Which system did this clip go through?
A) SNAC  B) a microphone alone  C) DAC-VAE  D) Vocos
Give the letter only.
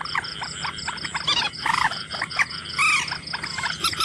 B